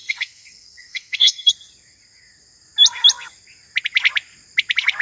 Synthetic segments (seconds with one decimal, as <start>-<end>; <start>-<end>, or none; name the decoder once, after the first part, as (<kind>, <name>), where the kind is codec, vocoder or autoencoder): 0.0-1.5 (codec, SNAC)